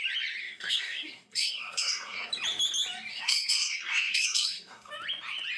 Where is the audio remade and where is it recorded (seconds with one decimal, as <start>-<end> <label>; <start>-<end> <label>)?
0.0-0.4 recorded; 0.4-2.3 remade; 2.3-3.1 recorded; 3.1-4.9 remade; 4.9-5.6 recorded